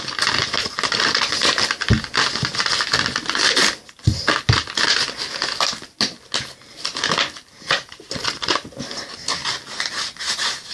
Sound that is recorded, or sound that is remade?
recorded